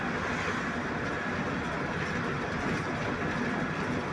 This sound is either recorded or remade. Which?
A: recorded